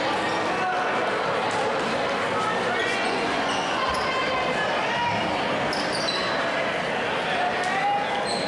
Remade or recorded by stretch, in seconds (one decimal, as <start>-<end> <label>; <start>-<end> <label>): 0.0-2.8 recorded; 2.8-3.9 remade; 3.9-8.5 recorded